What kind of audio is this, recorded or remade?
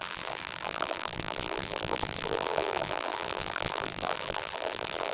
remade